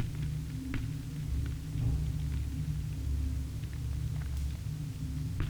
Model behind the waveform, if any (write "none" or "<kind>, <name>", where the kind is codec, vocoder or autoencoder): none